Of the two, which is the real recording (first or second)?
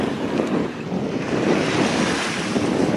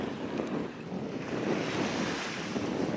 second